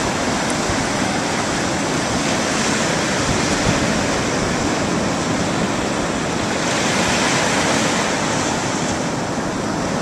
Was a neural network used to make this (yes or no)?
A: no